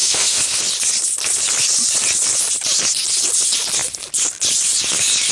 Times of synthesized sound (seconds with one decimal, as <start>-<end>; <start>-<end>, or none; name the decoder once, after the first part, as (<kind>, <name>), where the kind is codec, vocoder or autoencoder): 0.0-0.6 (autoencoder, DAC-VAE)